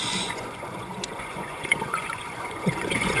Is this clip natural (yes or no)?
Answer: no